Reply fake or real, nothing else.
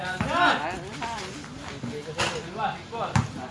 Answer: real